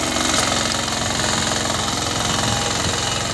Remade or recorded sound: recorded